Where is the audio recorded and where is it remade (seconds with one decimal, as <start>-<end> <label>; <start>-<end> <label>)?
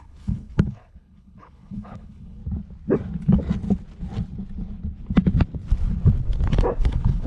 0.0-2.4 remade; 2.4-6.8 recorded; 6.8-7.3 remade